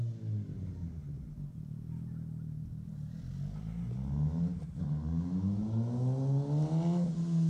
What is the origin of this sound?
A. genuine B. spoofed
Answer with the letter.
A